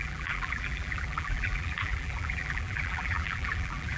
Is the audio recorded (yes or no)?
no